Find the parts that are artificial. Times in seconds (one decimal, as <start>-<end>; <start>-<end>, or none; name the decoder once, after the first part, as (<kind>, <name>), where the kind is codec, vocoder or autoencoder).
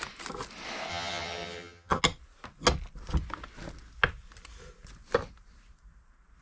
0.9-2.0 (vocoder, HiFi-GAN)